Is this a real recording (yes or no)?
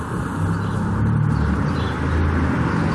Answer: yes